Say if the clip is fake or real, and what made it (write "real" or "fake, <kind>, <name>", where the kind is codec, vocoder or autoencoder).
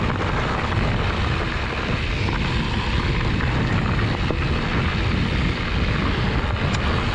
real